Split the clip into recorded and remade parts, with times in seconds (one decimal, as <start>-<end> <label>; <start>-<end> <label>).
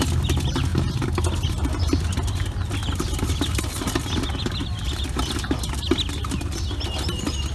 0.0-7.5 recorded